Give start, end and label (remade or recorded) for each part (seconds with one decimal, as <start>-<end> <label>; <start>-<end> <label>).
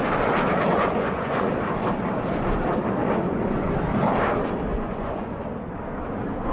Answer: 0.0-0.7 recorded; 0.7-1.5 remade; 1.5-3.0 recorded; 3.0-3.7 remade; 3.7-4.7 recorded; 4.7-5.4 remade; 5.4-6.5 recorded